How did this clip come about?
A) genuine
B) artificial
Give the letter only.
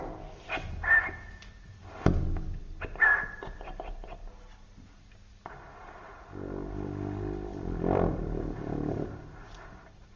A